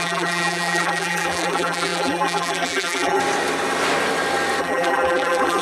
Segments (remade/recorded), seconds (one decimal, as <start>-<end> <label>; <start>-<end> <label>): 0.0-3.2 remade; 3.2-4.6 recorded; 4.6-5.6 remade